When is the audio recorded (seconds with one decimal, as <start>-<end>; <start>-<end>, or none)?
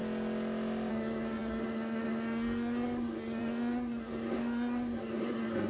0.0-0.9